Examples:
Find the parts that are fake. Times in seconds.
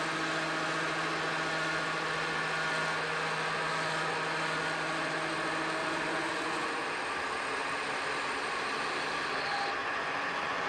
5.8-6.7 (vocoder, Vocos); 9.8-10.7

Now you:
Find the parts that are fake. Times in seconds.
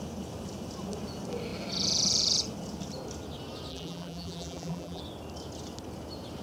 3.7-5.0 (vocoder, BigVGAN v2)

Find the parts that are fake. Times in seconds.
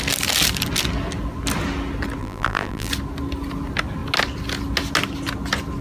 2.2-2.9 (vocoder, BigVGAN v2)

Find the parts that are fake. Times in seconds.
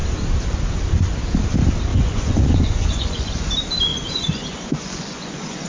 1.9-3.5 (vocoder, Vocos); 3.9-5.7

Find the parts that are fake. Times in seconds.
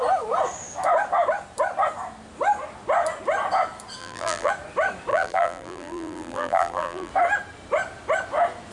4.0-4.5 (vocoder, BigVGAN v2); 5.1-7.1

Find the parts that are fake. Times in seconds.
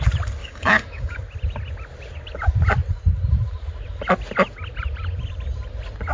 0.4-1.2 (codec, DAC)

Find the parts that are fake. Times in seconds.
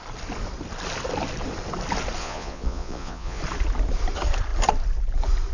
2.2-3.4 (vocoder, Vocos)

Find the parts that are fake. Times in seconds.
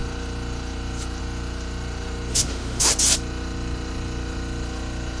2.3-2.9 (autoencoder, DAC-VAE)